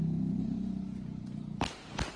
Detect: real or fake real